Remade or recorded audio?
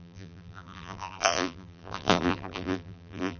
remade